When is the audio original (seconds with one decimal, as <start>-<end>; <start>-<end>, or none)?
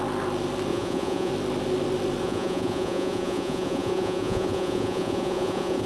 0.0-0.7; 1.3-2.2